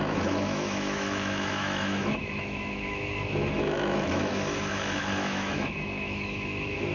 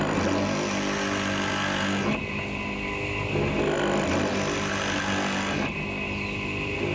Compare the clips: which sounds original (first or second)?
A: second